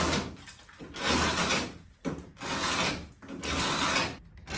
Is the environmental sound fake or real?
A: real